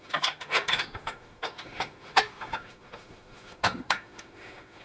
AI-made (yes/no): yes